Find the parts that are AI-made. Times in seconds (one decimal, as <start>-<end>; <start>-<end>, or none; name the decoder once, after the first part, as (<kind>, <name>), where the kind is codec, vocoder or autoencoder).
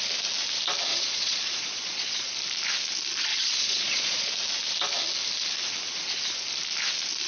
0.9-2.3 (vocoder, Vocos); 3.3-4.3